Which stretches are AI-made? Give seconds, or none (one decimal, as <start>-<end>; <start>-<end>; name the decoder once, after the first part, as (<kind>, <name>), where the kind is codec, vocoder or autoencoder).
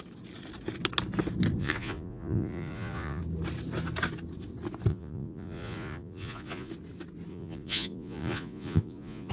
1.6-3.2 (vocoder, Vocos); 4.9-6.7; 7.3-9.3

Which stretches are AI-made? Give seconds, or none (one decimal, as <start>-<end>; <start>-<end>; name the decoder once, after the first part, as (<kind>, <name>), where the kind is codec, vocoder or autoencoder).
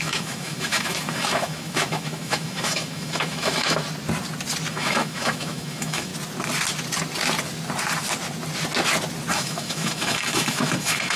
0.0-3.8 (autoencoder, DAC-VAE); 4.7-6.1; 9.3-11.2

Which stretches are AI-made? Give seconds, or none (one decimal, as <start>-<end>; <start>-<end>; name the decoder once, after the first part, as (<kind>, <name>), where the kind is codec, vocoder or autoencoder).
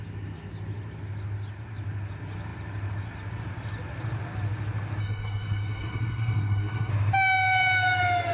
5.0-6.9 (codec, SNAC)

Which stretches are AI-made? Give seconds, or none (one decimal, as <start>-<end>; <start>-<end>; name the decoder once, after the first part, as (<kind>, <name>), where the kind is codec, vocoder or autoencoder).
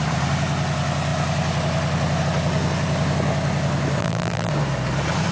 4.0-4.5 (vocoder, BigVGAN v2)